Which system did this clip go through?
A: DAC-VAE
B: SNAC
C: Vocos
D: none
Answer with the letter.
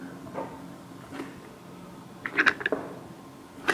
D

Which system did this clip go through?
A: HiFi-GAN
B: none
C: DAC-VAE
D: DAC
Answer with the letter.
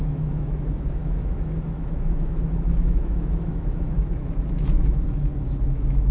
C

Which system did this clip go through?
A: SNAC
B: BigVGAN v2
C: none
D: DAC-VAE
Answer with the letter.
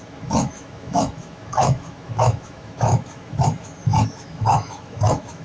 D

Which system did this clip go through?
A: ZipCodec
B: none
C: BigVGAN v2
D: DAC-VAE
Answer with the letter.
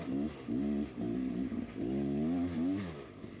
B